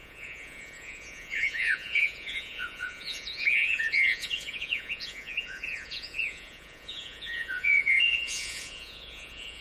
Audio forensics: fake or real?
fake